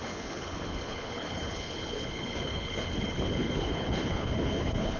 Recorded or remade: remade